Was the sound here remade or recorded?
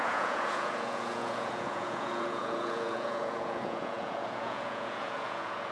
remade